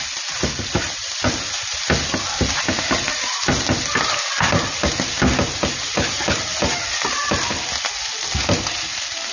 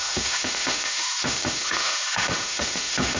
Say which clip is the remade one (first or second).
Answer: second